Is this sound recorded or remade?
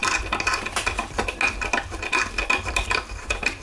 recorded